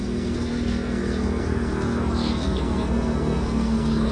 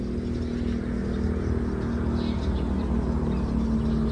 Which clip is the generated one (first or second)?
first